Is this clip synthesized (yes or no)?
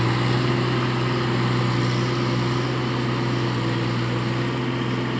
no